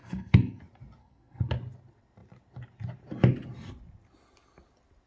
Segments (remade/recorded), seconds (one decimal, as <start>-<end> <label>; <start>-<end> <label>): 0.0-0.6 remade; 0.6-1.0 recorded; 1.0-1.5 remade; 1.5-5.1 recorded